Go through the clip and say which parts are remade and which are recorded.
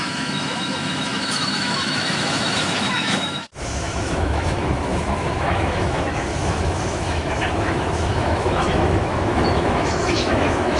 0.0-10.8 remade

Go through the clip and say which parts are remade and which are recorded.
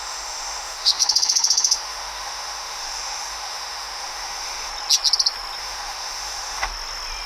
0.0-4.7 remade; 4.7-5.6 recorded; 5.6-6.7 remade; 6.7-7.3 recorded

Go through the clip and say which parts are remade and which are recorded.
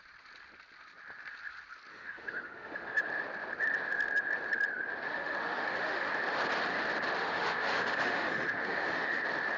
0.0-1.9 recorded; 1.9-3.1 remade; 3.1-5.1 recorded; 5.1-6.1 remade; 6.1-7.2 recorded; 7.2-9.2 remade; 9.2-9.6 recorded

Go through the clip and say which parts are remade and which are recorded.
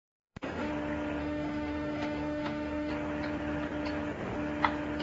0.0-0.7 remade; 0.7-1.2 recorded; 1.2-2.9 remade; 2.9-5.0 recorded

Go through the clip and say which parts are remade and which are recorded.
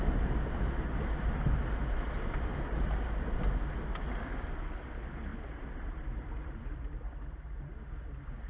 0.0-8.5 recorded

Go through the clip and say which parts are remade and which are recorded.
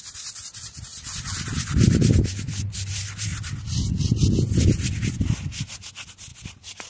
0.0-6.9 recorded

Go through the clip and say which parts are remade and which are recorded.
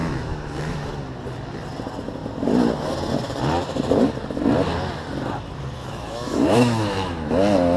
0.0-0.9 remade; 0.9-5.8 recorded; 5.8-7.3 remade; 7.3-7.8 recorded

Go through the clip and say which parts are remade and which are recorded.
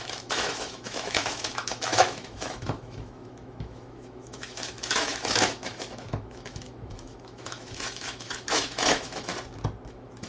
0.0-9.3 remade; 9.3-9.9 recorded; 9.9-10.3 remade